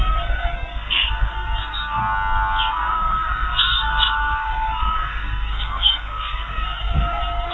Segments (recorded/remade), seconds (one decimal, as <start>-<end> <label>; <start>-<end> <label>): 0.0-2.0 remade; 2.0-2.7 recorded; 2.7-7.5 remade